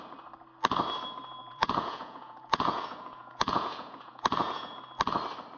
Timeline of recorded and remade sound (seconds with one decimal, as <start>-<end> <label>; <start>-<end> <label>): 0.0-1.4 recorded; 1.4-4.8 remade; 4.8-5.6 recorded

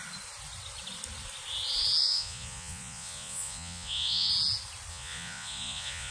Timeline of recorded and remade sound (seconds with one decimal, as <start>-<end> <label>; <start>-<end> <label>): 0.0-2.0 recorded; 2.0-4.3 remade; 4.3-4.9 recorded; 4.9-6.1 remade